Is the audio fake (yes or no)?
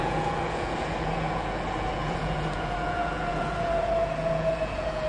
yes